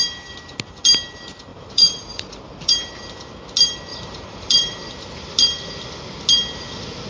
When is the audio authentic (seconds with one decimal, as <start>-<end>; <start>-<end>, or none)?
0.0-1.5; 2.7-3.9; 4.9-7.1